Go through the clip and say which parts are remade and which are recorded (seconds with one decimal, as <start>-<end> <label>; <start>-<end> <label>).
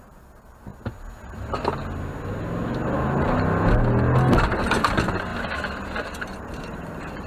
0.0-0.7 remade; 0.7-4.8 recorded; 4.8-5.3 remade; 5.3-6.0 recorded; 6.0-7.3 remade